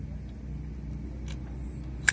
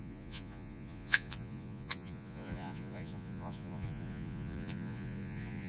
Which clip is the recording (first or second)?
first